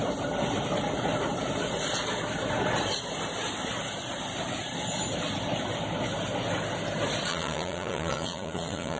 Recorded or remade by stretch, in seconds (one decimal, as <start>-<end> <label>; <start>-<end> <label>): 0.0-7.3 recorded; 7.3-9.0 remade